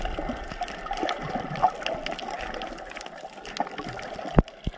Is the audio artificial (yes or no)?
no